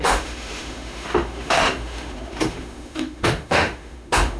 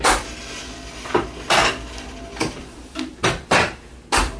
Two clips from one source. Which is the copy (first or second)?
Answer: first